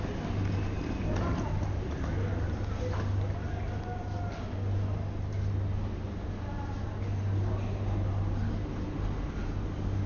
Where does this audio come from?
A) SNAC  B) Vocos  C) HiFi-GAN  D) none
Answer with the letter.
D